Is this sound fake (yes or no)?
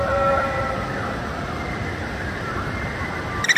no